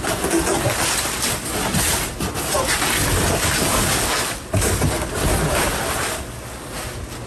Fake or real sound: real